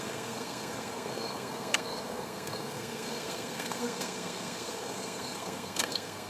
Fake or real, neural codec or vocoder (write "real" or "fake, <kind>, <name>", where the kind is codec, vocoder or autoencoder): fake, codec, SNAC